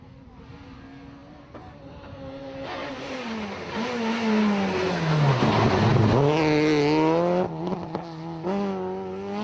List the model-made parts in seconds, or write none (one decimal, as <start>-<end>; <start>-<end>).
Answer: 1.2-3.2